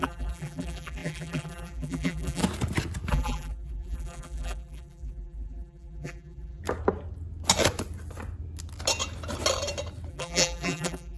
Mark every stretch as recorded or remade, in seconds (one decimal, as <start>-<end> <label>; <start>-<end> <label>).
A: 0.0-2.4 remade; 2.4-3.1 recorded; 3.1-6.6 remade; 6.6-10.1 recorded; 10.1-11.2 remade